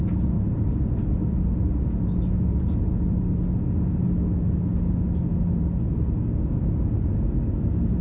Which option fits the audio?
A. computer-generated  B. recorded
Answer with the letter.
B